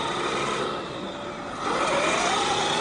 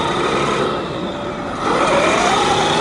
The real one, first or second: first